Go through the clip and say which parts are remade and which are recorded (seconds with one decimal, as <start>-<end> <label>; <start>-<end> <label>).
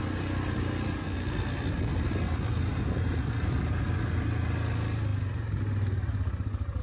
0.0-6.8 recorded